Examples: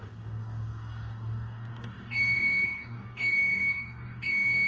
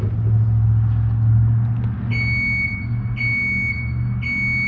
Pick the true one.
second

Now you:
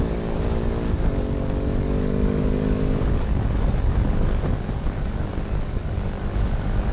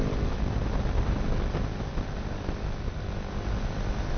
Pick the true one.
second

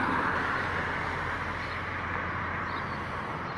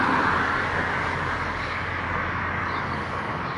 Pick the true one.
first